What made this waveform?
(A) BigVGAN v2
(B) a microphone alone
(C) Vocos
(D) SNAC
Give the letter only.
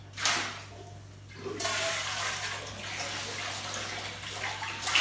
B